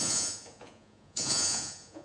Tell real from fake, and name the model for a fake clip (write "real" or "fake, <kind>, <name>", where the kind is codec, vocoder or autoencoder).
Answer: fake, vocoder, Vocos